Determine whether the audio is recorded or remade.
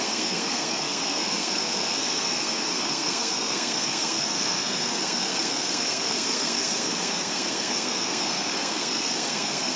remade